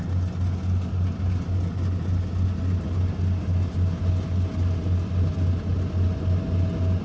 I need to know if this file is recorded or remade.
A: recorded